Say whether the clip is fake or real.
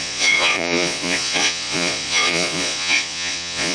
fake